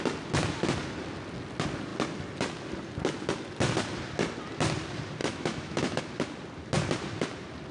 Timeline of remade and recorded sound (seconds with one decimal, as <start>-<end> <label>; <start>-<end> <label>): 0.0-5.2 recorded; 5.2-6.0 remade; 6.0-7.7 recorded